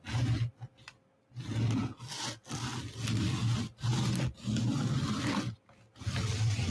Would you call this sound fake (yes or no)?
no